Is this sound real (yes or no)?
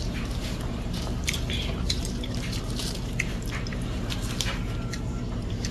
no